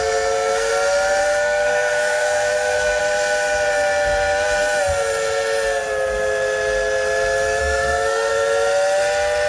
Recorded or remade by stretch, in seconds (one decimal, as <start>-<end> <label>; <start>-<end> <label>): 0.0-0.7 remade; 0.7-1.2 recorded; 1.2-3.0 remade; 3.0-7.6 recorded; 7.6-8.3 remade; 8.3-9.5 recorded